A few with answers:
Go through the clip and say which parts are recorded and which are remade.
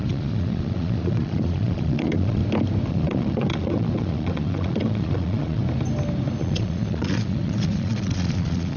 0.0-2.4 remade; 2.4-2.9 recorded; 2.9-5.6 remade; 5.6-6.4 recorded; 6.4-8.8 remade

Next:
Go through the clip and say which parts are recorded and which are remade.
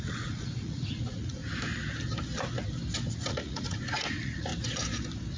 0.0-1.4 remade; 1.4-3.1 recorded; 3.1-4.5 remade; 4.5-5.4 recorded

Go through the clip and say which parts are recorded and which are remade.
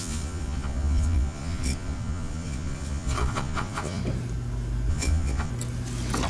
0.0-4.0 remade; 4.0-4.9 recorded; 4.9-5.5 remade; 5.5-6.3 recorded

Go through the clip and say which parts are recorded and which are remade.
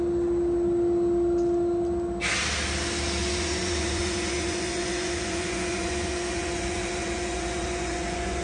0.0-3.2 recorded; 3.2-8.4 remade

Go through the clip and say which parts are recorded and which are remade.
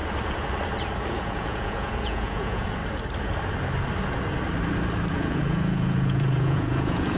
0.0-1.1 recorded; 1.1-2.8 remade; 2.8-5.1 recorded; 5.1-7.2 remade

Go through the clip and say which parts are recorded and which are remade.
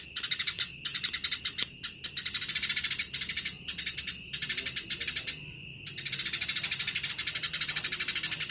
0.0-8.5 recorded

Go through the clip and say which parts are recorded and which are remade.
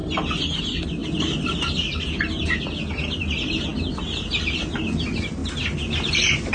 0.0-6.5 recorded